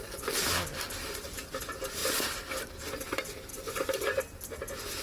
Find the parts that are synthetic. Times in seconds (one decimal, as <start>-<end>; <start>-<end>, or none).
3.5-4.2